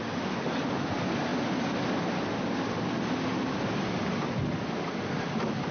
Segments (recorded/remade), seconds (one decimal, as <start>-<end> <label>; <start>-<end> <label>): 0.0-5.7 recorded